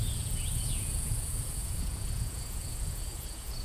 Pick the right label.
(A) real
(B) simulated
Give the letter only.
B